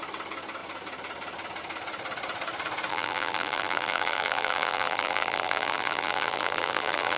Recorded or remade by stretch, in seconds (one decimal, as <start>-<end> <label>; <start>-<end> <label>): 0.0-2.9 recorded; 2.9-7.2 remade